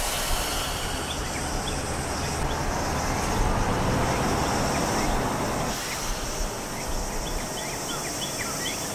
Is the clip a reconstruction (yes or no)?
no